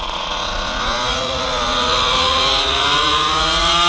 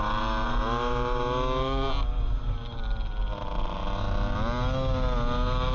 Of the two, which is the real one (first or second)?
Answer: second